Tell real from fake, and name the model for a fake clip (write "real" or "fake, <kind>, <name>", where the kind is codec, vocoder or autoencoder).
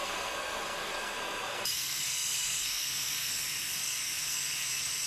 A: fake, codec, SNAC